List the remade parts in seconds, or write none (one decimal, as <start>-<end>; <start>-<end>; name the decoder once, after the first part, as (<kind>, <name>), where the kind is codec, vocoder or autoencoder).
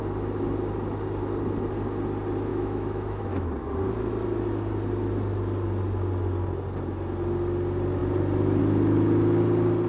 2.5-3.5 (autoencoder, DAC-VAE)